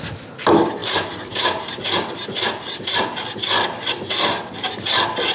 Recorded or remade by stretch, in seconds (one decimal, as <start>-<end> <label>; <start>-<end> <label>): 0.0-0.8 recorded; 0.8-1.9 remade; 1.9-5.3 recorded